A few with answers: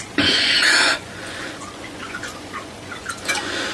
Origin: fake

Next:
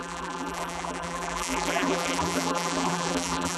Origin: fake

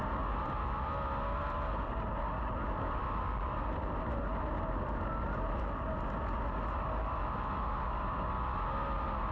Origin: real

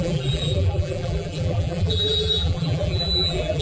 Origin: fake